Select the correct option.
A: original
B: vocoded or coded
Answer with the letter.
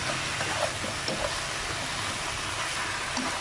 A